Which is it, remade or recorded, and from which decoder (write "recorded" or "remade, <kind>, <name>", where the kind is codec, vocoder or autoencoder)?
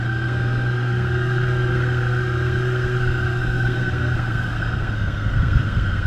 remade, codec, SNAC